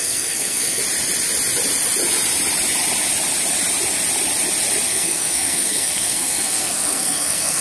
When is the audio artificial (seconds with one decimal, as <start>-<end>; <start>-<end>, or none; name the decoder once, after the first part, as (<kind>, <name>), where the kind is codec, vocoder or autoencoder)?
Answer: 0.0-0.8 (codec, SNAC); 4.9-7.6